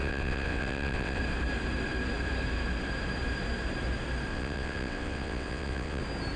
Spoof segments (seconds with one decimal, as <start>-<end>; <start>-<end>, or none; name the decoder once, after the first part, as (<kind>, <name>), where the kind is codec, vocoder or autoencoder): 0.0-1.2 (vocoder, WaveNeXt); 4.3-6.0